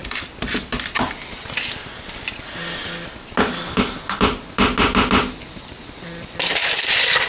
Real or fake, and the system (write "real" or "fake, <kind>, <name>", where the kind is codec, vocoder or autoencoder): real